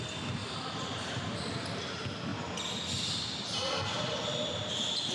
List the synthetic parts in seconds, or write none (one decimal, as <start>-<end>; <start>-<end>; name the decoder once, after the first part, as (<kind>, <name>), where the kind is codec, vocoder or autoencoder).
none

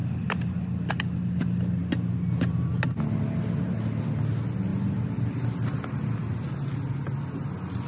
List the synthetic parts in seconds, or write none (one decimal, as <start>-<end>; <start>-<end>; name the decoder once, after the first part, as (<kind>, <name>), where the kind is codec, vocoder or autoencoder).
none

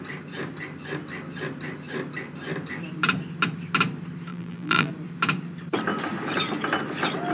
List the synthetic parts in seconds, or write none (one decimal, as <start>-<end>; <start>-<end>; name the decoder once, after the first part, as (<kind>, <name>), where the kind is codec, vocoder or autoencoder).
4.3-4.9 (vocoder, BigVGAN v2)

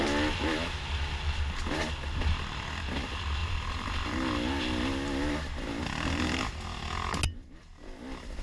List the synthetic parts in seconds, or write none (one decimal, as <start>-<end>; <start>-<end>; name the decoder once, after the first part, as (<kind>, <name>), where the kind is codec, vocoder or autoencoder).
none

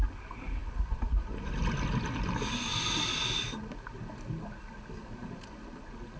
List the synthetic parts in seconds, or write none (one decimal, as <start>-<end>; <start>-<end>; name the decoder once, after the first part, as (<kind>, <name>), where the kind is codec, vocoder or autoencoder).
none

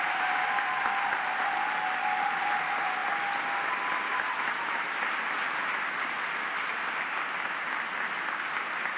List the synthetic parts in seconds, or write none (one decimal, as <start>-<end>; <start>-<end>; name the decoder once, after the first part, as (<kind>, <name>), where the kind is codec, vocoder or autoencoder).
none

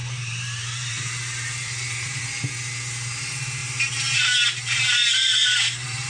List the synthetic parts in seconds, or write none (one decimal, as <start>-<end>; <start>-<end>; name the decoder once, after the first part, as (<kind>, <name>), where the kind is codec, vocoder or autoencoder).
0.0-2.2 (vocoder, BigVGAN v2); 3.6-6.1